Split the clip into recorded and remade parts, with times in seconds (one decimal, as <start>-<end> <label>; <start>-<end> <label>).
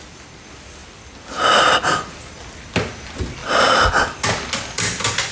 0.0-5.3 recorded